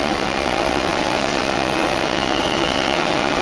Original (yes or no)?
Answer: no